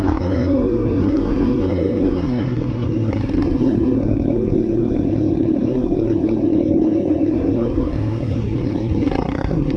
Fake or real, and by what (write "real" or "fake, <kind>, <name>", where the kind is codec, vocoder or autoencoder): fake, codec, SNAC